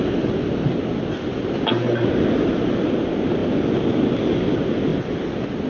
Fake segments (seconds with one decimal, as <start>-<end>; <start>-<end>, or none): none